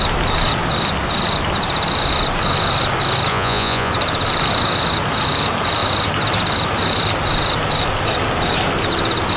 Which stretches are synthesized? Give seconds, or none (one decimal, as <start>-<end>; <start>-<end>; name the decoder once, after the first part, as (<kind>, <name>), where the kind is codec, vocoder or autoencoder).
3.3-3.9 (vocoder, Vocos)